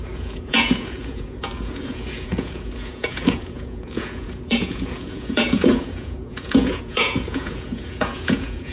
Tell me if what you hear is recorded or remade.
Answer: remade